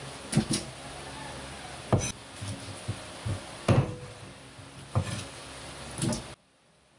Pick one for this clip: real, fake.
real